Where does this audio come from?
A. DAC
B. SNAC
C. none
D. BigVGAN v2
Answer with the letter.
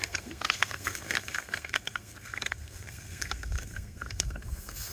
B